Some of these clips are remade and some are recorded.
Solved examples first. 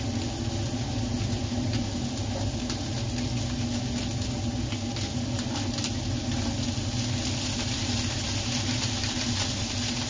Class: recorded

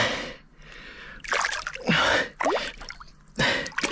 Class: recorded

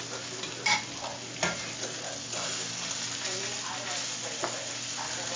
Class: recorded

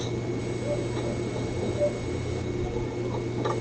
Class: recorded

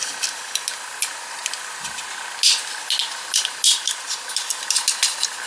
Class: recorded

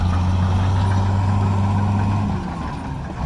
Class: recorded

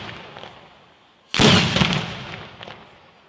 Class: recorded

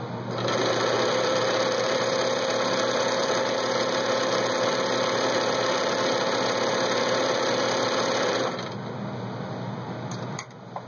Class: recorded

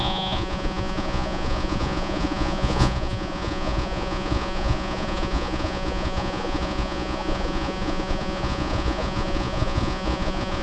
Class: remade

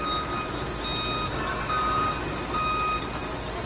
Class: recorded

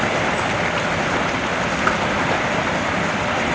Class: recorded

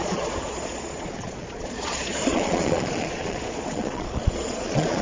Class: remade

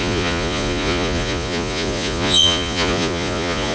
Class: remade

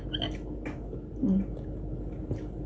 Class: recorded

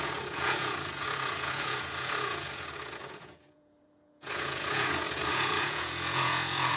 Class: remade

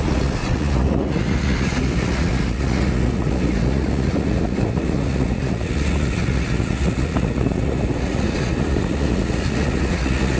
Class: remade